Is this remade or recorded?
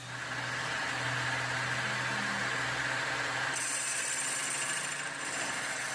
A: recorded